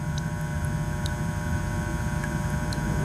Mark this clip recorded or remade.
recorded